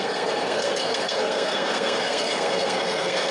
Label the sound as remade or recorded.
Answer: remade